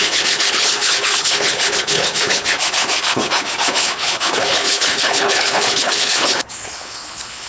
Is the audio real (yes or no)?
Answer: no